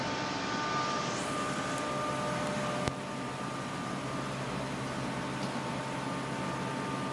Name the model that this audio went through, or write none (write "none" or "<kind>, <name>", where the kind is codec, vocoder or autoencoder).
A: none